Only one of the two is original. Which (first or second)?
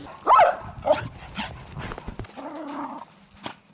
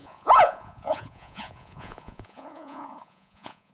first